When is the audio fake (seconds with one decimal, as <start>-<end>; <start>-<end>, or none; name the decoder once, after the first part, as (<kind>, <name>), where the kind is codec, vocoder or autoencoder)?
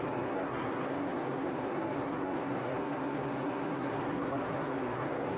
0.0-5.4 (codec, SNAC)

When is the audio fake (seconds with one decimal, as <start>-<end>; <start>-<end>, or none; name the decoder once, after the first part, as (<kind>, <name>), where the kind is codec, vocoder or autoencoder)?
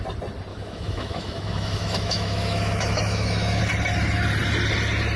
0.5-3.6 (autoencoder, DAC-VAE)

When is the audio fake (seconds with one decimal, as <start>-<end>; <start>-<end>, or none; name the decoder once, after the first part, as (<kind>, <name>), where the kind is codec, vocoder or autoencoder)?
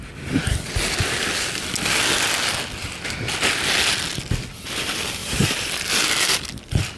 5.2-5.8 (vocoder, BigVGAN v2)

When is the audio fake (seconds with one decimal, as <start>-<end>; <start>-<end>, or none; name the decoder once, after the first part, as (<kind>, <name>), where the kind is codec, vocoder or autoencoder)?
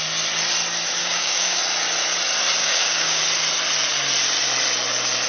1.0-1.6 (codec, DAC); 2.6-3.2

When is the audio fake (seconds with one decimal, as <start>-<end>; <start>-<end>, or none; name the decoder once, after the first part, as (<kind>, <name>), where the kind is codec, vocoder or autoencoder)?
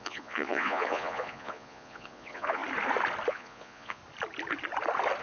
0.0-2.6 (vocoder, Vocos); 3.3-4.0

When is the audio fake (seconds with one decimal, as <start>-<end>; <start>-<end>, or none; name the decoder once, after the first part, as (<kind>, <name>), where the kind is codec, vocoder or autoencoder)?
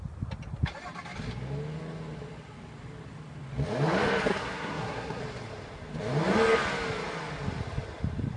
4.3-5.2 (codec, SNAC)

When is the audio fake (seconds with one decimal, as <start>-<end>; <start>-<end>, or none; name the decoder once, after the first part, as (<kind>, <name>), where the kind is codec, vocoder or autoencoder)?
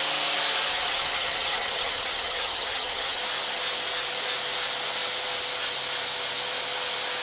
0.7-3.2 (vocoder, HiFi-GAN)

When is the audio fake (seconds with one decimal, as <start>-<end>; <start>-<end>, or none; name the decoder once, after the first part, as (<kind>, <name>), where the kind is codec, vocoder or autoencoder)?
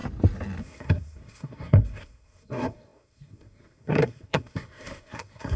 0.6-5.6 (codec, SNAC)